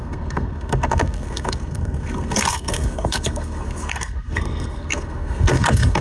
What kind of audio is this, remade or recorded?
remade